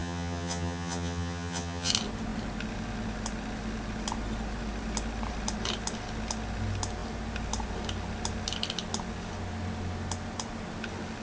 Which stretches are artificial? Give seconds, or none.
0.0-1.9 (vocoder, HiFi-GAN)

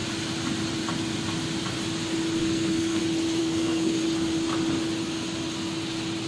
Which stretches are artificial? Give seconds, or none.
2.4-3.0 (codec, SNAC); 3.4-4.0

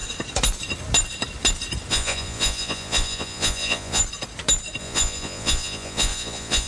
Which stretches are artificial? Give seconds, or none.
1.9-4.0 (vocoder, Vocos); 4.8-6.7